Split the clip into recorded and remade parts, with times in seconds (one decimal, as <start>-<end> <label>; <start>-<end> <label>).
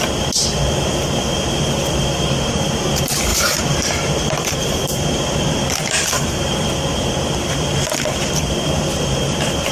0.0-3.3 recorded; 3.3-6.7 remade; 6.7-9.7 recorded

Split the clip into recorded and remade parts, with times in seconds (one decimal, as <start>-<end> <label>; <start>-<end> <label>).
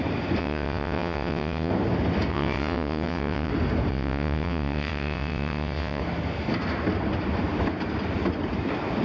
0.0-0.4 recorded; 0.4-1.7 remade; 1.7-2.3 recorded; 2.3-3.5 remade; 3.5-3.9 recorded; 3.9-6.0 remade; 6.0-9.0 recorded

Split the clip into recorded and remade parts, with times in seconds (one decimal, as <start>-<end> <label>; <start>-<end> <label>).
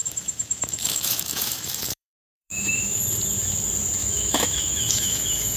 0.0-3.0 remade; 3.0-4.0 recorded; 4.0-5.6 remade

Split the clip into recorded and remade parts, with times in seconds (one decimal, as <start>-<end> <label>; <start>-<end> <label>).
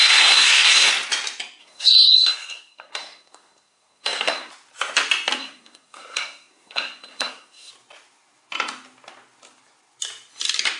0.0-0.9 remade; 0.9-1.6 recorded; 1.6-4.5 remade; 4.5-5.4 recorded; 5.4-7.7 remade; 7.7-10.8 recorded